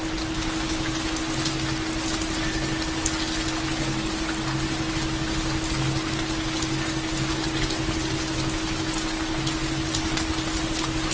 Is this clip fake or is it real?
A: real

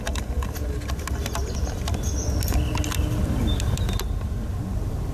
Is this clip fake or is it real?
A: real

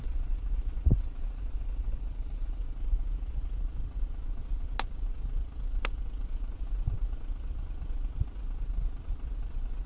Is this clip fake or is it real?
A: real